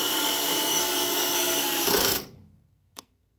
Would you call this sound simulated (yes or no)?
yes